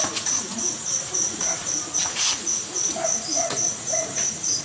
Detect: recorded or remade remade